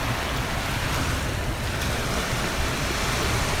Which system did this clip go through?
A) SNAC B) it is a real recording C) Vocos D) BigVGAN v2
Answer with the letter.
B